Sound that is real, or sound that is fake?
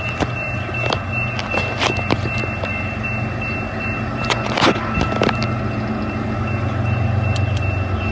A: real